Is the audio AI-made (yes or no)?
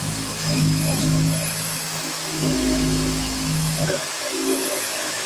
yes